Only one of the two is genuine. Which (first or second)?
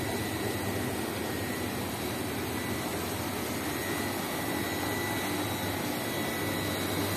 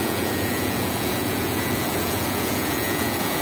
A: first